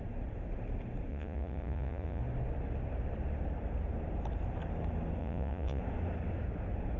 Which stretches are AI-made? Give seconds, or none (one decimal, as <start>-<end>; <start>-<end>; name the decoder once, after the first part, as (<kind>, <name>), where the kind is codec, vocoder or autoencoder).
1.1-2.2 (vocoder, Vocos); 5.2-5.8